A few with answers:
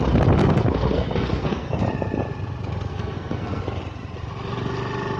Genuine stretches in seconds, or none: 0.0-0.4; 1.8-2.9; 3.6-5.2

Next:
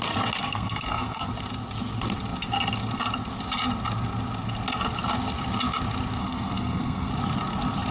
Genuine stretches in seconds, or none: 0.0-0.4; 1.3-6.2; 7.1-7.9

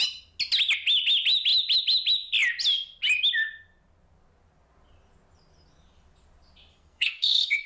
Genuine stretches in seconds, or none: 0.0-6.7